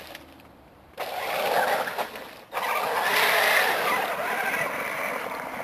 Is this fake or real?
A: real